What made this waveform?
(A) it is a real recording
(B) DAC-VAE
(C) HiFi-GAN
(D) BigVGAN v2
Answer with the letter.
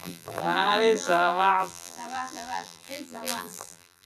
D